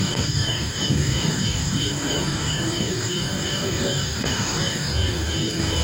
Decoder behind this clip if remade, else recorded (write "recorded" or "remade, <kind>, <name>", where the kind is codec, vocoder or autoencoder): remade, codec, DAC